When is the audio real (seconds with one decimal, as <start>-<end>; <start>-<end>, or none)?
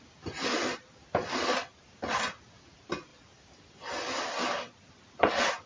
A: 0.0-5.7